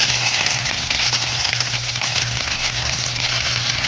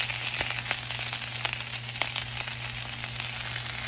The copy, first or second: first